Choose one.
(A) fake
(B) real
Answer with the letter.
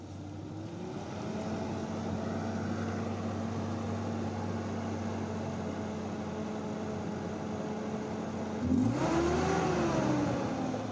B